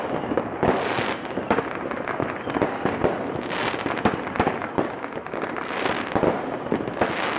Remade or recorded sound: recorded